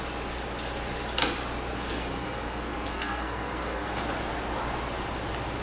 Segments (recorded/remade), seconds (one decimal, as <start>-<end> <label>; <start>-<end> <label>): 0.0-1.7 recorded; 1.7-4.1 remade; 4.1-5.6 recorded